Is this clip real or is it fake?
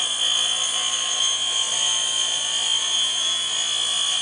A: real